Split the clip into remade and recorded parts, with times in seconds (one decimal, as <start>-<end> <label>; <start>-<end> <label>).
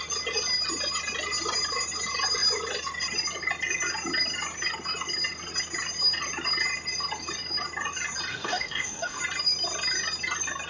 0.0-8.3 recorded; 8.3-9.2 remade; 9.2-10.7 recorded